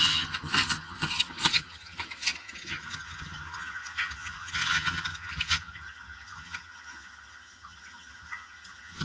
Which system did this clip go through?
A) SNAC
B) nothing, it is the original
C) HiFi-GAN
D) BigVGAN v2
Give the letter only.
C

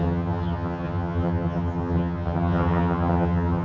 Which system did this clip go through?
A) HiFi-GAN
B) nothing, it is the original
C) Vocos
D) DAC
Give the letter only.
A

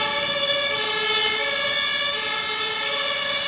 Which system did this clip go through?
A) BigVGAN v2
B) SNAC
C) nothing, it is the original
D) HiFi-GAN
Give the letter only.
C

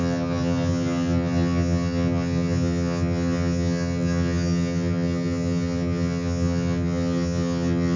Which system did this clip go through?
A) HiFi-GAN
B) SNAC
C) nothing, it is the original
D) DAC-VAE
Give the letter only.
A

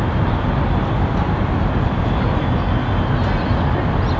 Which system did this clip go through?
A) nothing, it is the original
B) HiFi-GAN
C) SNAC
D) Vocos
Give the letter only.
A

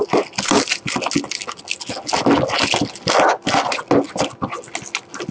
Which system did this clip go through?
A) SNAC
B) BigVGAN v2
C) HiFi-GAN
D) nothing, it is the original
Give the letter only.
D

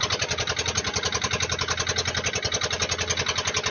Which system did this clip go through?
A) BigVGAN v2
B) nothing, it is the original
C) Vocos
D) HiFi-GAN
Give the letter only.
B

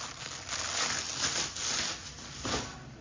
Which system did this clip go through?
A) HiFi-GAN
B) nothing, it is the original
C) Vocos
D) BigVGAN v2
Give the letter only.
B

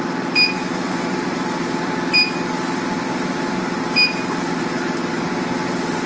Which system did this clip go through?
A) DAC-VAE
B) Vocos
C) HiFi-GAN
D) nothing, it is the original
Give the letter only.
D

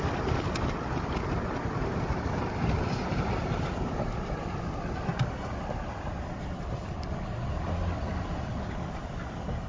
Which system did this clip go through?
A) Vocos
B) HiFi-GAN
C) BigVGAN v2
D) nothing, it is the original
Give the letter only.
D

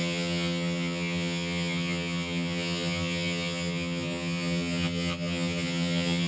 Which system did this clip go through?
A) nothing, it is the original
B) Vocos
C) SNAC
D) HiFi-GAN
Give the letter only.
D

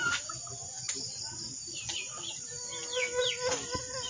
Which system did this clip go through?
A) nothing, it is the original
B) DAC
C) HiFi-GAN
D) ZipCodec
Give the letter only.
A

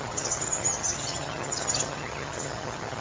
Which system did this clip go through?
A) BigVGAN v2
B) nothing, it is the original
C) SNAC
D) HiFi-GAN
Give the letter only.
D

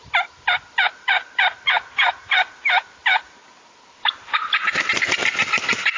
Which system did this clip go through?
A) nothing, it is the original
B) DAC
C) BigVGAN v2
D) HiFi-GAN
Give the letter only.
A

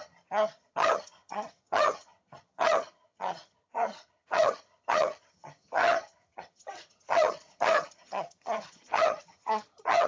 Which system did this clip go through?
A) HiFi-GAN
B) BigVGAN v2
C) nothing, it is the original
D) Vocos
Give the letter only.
A